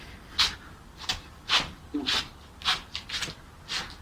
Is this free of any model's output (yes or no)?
yes